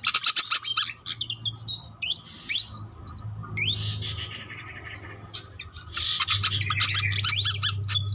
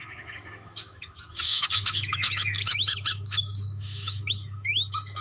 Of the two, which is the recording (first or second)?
first